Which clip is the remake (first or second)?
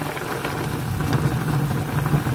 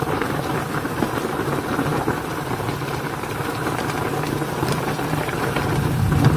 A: second